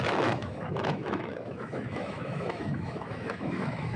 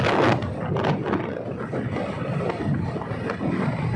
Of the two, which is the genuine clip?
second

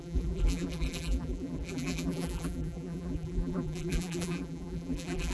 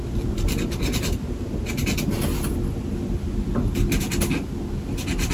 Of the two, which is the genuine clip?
second